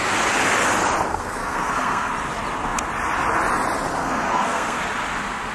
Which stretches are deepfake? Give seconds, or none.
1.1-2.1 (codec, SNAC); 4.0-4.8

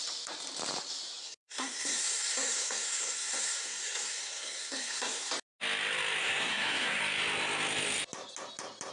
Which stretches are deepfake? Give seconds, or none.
1.2-5.3 (codec, SNAC); 6.2-7.0

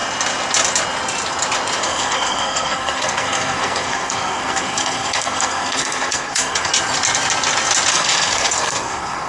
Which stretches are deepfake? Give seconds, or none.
1.8-6.7 (codec, SNAC); 7.9-9.3

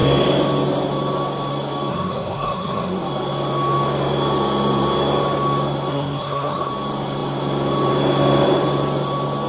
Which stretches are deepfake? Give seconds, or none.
1.9-3.1 (codec, SNAC); 5.9-6.7

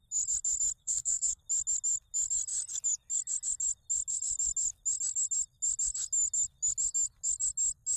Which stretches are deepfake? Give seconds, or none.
0.8-1.4 (codec, SNAC)

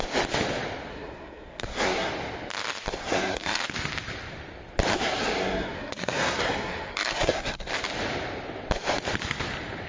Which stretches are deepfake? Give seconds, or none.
0.9-2.1 (codec, SNAC); 3.0-3.6; 4.9-7.7

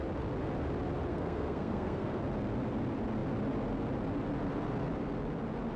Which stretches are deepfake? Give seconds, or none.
1.1-2.2 (codec, SNAC)